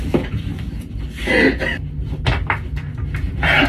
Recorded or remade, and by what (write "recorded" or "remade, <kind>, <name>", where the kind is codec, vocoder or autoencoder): recorded